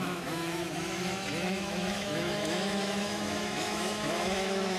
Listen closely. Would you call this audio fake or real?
fake